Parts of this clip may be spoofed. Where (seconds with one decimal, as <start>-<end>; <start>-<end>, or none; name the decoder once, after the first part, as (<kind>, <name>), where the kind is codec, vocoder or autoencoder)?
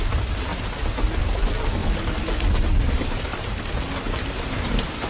0.0-0.5 (vocoder, BigVGAN v2); 1.2-3.3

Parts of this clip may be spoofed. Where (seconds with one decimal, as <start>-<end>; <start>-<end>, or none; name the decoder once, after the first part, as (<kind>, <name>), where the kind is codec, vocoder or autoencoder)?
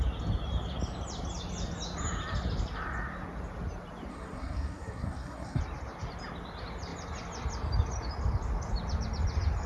4.1-5.6 (codec, SNAC)